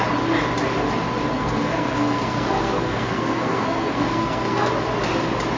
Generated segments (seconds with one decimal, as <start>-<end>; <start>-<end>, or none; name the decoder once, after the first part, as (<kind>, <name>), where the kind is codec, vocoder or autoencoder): 1.3-4.7 (codec, SNAC)